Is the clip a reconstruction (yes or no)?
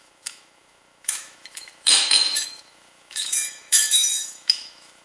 yes